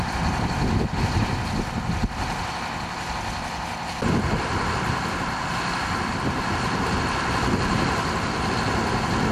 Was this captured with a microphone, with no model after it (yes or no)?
yes